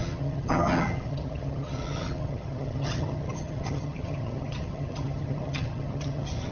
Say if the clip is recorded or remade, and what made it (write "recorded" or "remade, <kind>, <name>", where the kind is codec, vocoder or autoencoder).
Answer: remade, vocoder, HiFi-GAN